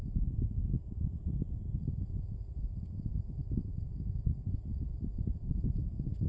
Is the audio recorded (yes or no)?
yes